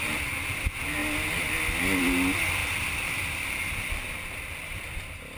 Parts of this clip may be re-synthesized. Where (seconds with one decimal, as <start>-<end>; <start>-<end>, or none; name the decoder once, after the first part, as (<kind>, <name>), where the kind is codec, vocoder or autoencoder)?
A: 2.6-3.5 (vocoder, BigVGAN v2)